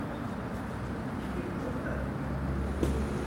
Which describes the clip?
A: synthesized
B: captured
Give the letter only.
B